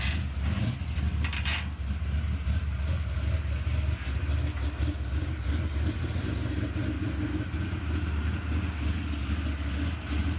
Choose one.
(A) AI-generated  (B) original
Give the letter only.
B